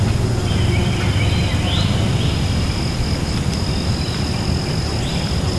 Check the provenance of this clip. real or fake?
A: real